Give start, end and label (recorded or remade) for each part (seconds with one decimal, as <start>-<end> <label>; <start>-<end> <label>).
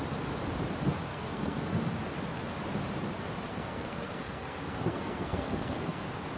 0.0-1.1 recorded; 1.1-1.8 remade; 1.8-3.5 recorded; 3.5-6.0 remade; 6.0-6.4 recorded